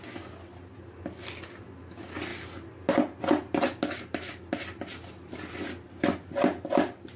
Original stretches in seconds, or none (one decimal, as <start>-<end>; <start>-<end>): 0.0-7.2